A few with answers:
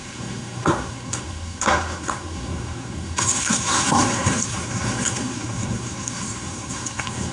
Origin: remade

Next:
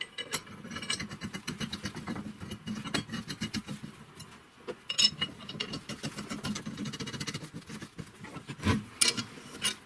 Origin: recorded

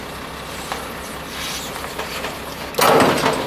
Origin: recorded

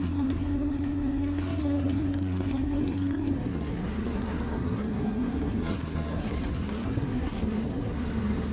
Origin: remade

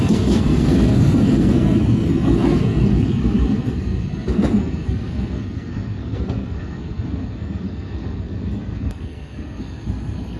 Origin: remade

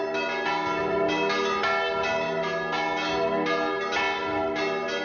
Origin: recorded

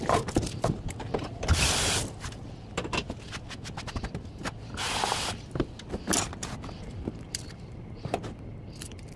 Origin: recorded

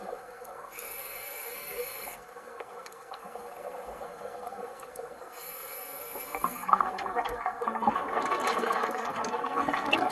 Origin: remade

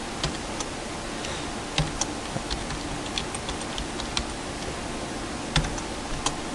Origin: recorded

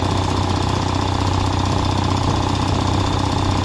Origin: recorded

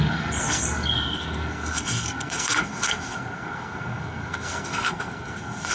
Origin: remade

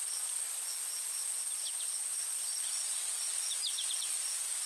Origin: recorded